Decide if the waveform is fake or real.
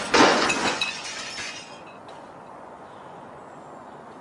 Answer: fake